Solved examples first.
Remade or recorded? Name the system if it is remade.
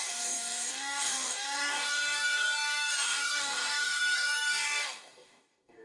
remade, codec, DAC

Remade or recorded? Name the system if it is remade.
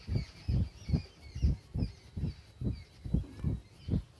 recorded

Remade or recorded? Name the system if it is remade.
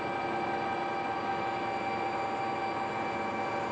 recorded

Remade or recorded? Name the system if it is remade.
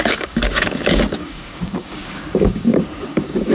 remade, codec, DAC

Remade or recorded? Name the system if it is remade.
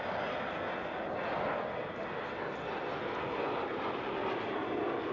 recorded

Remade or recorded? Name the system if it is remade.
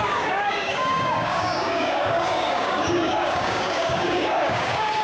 remade, codec, DAC